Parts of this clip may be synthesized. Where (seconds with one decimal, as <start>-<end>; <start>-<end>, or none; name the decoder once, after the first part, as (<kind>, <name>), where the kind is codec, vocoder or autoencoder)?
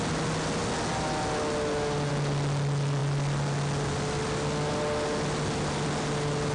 none